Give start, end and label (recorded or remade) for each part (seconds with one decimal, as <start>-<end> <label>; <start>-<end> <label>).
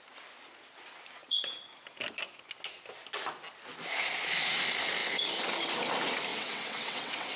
0.0-6.3 recorded; 6.3-7.4 remade